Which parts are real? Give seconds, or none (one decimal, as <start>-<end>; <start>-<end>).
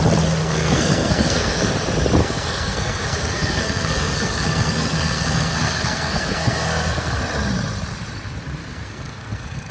0.0-0.4; 1.7-2.2; 7.2-8.6